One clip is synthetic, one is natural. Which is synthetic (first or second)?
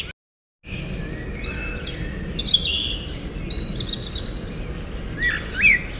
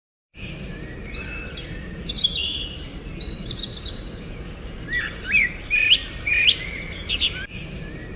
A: second